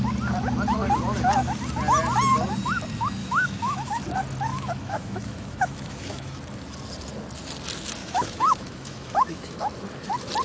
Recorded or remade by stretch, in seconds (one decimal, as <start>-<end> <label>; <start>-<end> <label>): 0.0-3.2 recorded; 3.2-4.0 remade; 4.0-4.5 recorded; 4.5-6.4 remade; 6.4-8.0 recorded; 8.0-9.6 remade; 9.6-10.4 recorded